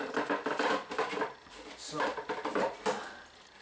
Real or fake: real